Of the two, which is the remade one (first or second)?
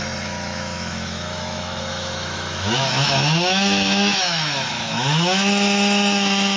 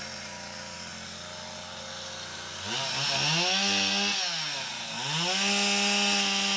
first